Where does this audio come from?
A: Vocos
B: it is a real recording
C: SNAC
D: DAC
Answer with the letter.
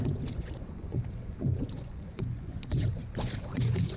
A